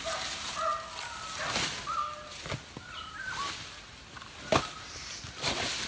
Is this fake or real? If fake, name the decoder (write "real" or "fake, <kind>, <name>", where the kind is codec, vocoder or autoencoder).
real